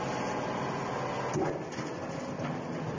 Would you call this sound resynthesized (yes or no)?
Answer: no